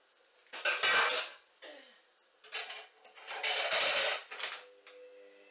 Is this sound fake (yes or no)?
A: no